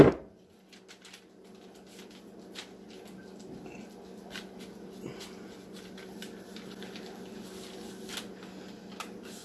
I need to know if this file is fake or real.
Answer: real